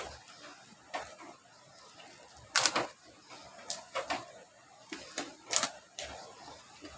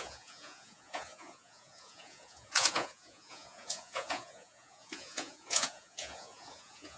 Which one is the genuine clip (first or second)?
first